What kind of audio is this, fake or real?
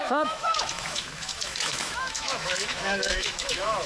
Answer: fake